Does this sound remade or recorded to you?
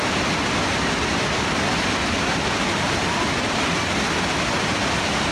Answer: recorded